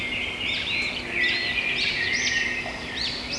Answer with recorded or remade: recorded